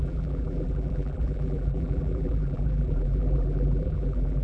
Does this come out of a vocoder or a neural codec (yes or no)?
yes